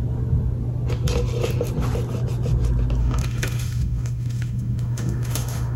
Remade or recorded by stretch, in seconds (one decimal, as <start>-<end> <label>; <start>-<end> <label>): 0.0-3.0 recorded; 3.0-5.8 remade